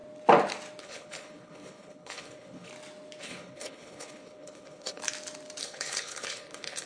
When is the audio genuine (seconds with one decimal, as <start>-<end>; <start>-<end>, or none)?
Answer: 0.0-0.8; 2.7-3.2; 5.0-5.6